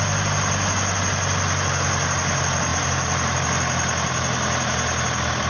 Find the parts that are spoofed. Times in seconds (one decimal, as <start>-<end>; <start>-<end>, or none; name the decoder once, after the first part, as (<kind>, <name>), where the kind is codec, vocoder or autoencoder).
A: none